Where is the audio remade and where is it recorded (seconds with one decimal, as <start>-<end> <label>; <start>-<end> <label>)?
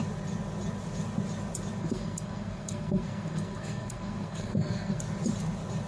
0.0-1.8 recorded; 1.8-5.0 remade; 5.0-5.9 recorded